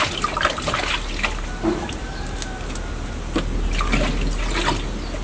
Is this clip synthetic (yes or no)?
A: no